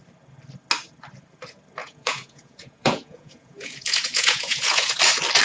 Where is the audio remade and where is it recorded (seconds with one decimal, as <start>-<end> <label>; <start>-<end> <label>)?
0.0-1.8 recorded; 1.8-5.0 remade; 5.0-5.4 recorded